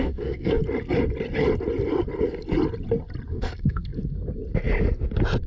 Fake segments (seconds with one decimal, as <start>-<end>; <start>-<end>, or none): 0.0-0.6; 3.3-3.9